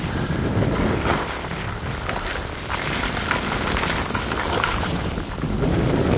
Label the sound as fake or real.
real